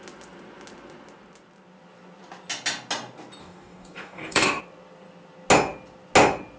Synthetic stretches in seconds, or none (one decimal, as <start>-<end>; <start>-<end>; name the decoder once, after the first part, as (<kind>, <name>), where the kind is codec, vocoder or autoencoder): 3.4-4.6 (codec, DAC)